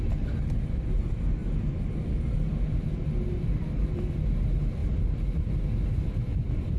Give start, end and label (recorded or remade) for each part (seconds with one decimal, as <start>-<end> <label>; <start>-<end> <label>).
0.0-6.8 recorded